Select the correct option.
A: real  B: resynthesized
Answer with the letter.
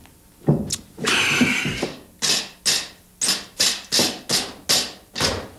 A